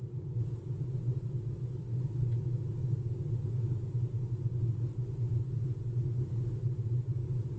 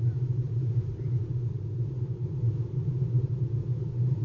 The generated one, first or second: second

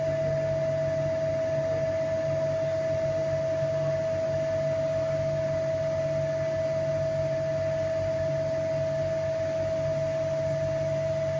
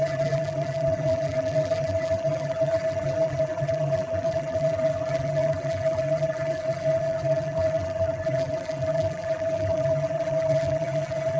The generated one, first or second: second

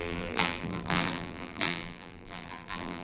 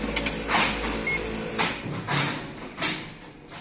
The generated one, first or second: first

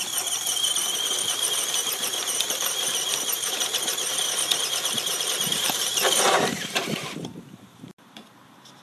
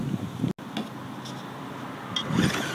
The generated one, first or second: first